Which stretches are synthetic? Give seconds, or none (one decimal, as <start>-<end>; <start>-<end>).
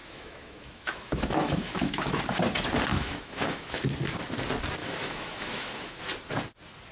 0.0-2.2; 2.9-3.8; 4.8-6.0